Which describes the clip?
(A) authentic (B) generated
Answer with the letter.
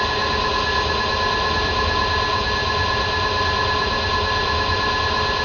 A